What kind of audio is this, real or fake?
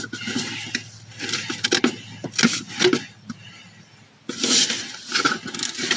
real